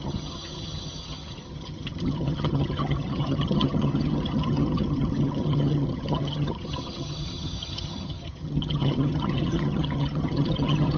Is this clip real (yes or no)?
no